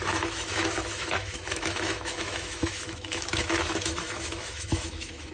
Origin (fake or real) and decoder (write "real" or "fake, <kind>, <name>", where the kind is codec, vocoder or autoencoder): fake, autoencoder, DAC-VAE